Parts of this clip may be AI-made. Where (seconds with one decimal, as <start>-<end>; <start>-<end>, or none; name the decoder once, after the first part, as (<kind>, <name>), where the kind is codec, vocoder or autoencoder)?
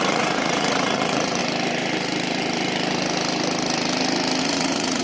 0.0-1.4 (vocoder, Vocos); 4.4-5.0